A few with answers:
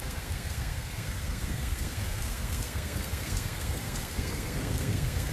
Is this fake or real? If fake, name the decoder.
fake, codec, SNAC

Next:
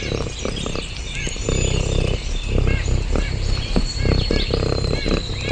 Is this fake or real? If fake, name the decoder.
real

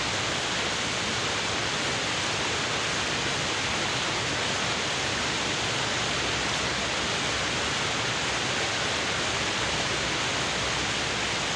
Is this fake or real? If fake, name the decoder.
real